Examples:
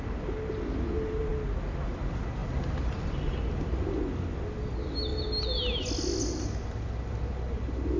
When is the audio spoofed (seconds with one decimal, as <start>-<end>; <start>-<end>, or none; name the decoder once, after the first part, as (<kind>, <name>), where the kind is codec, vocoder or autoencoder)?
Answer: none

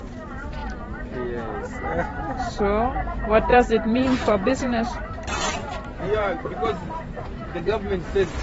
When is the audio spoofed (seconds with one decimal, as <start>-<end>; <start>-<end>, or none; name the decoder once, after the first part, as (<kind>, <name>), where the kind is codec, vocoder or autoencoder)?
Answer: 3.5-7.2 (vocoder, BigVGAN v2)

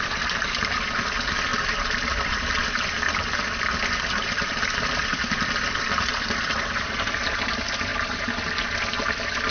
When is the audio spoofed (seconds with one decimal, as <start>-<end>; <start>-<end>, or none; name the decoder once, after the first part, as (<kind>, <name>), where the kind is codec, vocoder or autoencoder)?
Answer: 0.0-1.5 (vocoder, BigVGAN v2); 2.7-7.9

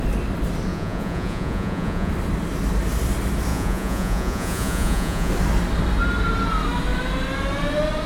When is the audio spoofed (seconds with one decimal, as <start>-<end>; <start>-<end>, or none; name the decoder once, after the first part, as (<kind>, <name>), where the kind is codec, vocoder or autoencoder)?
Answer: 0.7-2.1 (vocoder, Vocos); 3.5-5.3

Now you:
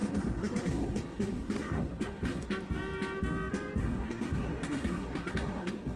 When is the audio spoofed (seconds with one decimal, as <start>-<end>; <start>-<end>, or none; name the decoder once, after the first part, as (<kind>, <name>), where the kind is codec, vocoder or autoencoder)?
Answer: 0.0-2.5 (codec, SNAC); 3.8-6.0

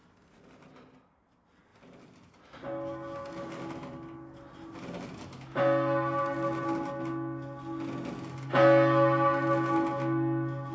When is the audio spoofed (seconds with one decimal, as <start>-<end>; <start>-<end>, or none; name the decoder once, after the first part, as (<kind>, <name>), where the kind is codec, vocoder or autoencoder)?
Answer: none